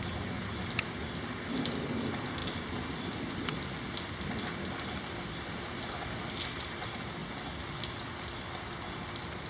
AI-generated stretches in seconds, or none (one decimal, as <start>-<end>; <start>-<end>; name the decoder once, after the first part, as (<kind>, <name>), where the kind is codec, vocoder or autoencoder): none

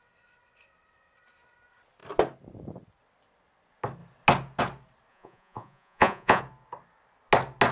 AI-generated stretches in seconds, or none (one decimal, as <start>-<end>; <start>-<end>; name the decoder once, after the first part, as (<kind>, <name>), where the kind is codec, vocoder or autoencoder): 5.1-6.4 (vocoder, Vocos)